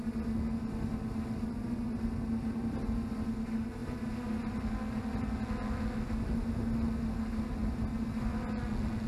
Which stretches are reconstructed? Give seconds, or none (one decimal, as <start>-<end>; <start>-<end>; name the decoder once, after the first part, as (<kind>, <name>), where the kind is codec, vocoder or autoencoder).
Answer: none